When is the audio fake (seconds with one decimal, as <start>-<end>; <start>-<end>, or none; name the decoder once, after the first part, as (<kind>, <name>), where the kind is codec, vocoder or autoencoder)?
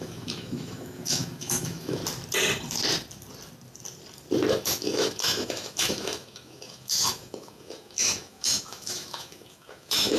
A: 0.0-2.0 (autoencoder, DAC-VAE); 4.5-10.2